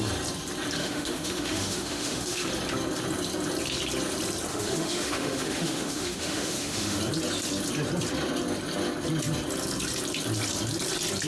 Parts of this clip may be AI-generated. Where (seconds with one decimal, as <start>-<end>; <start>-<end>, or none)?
0.8-2.5; 4.5-7.0